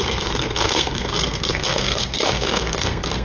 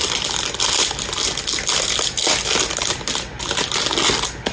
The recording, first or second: second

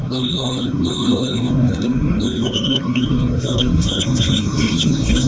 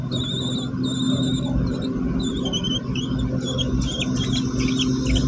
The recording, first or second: second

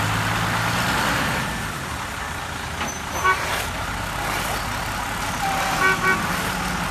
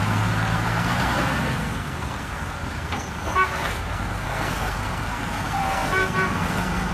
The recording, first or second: first